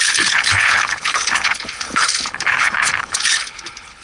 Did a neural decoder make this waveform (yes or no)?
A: yes